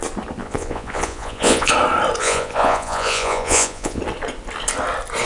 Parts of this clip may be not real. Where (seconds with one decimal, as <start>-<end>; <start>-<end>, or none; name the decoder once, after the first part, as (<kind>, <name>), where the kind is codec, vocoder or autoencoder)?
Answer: 0.4-1.7 (vocoder, Vocos); 2.2-4.0